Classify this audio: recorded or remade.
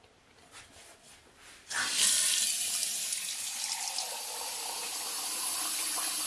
recorded